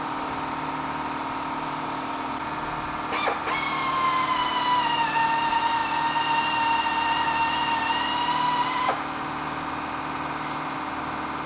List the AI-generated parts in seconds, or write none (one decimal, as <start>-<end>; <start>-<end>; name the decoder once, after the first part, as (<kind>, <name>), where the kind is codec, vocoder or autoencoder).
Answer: none